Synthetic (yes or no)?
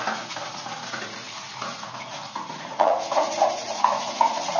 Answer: yes